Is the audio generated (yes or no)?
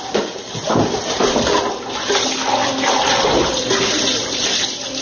no